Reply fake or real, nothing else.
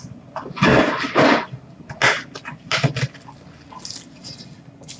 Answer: real